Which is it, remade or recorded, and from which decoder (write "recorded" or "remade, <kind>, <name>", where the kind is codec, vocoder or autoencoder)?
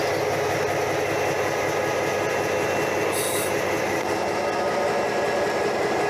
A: recorded